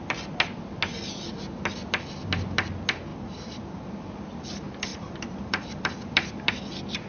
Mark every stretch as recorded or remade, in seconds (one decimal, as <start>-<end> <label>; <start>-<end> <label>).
0.0-3.1 recorded; 3.1-3.9 remade; 3.9-4.9 recorded; 4.9-6.5 remade; 6.5-7.1 recorded